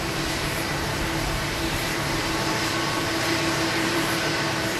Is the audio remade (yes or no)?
yes